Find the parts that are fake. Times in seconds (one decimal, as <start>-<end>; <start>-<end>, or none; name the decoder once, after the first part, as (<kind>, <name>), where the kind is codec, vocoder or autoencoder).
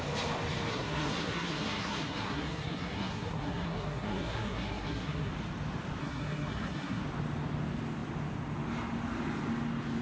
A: 0.7-5.3 (codec, SNAC); 6.0-7.0